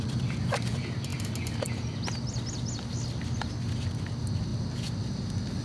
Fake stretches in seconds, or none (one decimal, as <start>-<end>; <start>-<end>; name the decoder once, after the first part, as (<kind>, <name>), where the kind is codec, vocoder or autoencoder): none

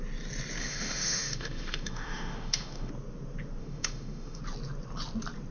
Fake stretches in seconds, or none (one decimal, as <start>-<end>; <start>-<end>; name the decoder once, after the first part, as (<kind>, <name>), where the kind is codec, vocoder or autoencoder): 0.6-2.9 (autoencoder, DAC-VAE); 3.6-4.4